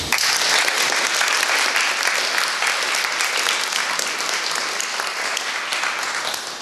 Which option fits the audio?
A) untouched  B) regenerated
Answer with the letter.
A